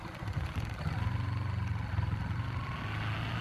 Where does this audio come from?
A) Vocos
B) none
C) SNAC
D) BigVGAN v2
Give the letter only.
B